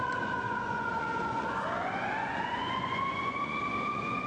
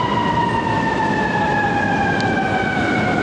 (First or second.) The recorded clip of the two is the second